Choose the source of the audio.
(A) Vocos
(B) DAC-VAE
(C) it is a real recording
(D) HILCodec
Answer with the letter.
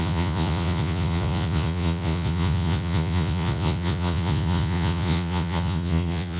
A